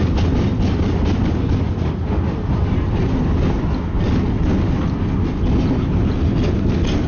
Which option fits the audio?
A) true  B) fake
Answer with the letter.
A